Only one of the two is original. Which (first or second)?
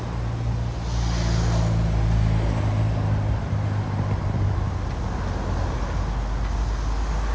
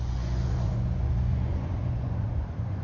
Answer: first